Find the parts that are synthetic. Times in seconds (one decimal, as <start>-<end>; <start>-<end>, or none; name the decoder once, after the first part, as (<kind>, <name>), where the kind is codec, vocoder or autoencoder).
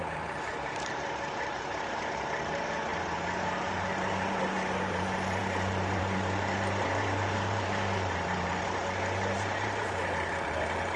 0.0-8.8 (vocoder, BigVGAN v2); 9.4-11.0